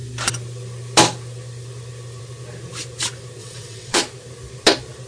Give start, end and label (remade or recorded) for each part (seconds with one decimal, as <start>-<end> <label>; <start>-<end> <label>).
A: 0.0-3.4 recorded; 3.4-4.0 remade; 4.0-5.1 recorded